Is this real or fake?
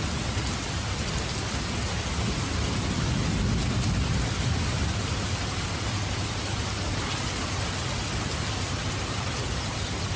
real